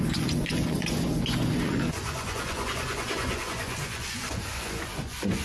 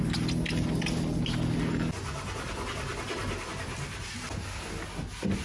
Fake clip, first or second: first